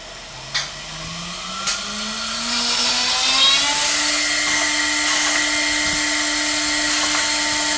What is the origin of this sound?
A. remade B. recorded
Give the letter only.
B